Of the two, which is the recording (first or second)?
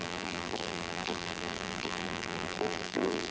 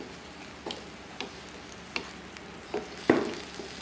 second